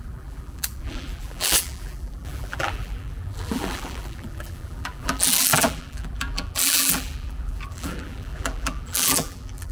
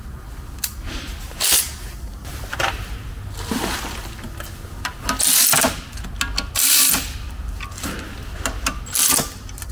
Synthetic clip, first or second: first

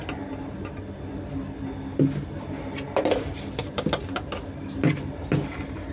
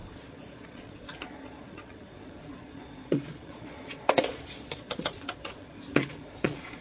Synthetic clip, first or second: second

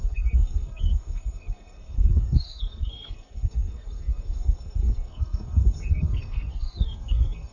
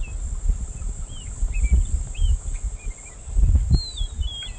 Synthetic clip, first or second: first